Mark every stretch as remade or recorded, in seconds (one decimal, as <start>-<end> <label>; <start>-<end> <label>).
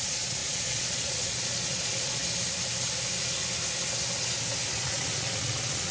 0.0-2.2 remade; 2.2-4.8 recorded; 4.8-5.9 remade